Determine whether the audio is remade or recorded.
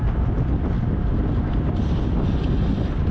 recorded